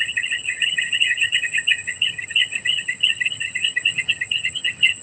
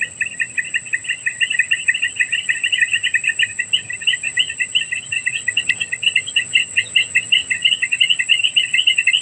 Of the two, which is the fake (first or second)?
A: first